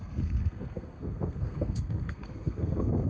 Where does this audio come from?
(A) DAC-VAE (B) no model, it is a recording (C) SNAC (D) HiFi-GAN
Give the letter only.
C